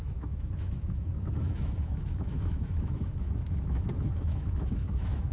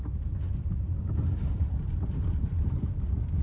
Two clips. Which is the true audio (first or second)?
second